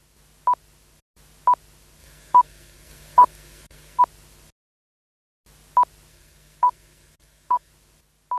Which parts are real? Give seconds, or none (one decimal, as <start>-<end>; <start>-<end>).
0.0-2.0; 4.0-6.1; 7.7-8.4